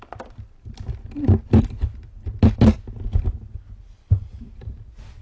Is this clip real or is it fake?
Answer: real